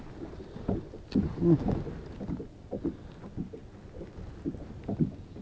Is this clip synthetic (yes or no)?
no